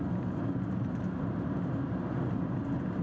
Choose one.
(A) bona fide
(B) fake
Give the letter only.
A